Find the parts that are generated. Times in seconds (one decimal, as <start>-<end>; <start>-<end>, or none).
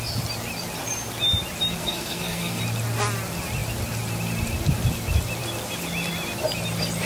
1.8-2.6